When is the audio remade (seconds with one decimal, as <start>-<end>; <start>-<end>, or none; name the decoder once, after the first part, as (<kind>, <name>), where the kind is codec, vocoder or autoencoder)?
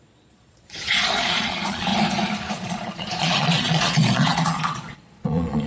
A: 0.0-1.9 (vocoder, Vocos); 2.5-5.7